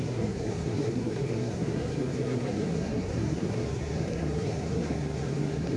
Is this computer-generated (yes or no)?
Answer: yes